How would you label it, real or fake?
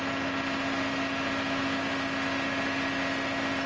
real